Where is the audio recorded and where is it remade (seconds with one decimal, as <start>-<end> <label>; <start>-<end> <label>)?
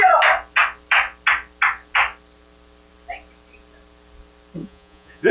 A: 0.0-4.6 recorded; 4.6-5.3 remade